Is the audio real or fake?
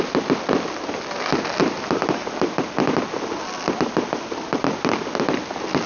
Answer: real